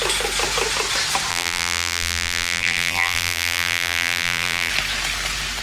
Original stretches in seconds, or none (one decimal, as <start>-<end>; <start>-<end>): 0.0-1.3; 4.7-5.6